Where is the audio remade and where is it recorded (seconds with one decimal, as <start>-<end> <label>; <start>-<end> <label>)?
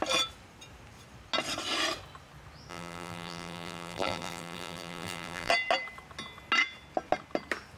0.0-2.7 recorded; 2.7-5.5 remade; 5.5-7.8 recorded